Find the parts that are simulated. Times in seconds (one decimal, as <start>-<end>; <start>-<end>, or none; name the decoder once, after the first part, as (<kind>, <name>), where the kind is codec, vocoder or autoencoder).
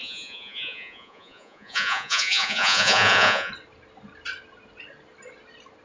0.0-3.5 (vocoder, Vocos)